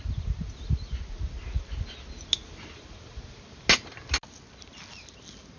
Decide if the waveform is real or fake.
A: real